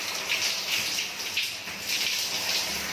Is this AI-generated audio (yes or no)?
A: no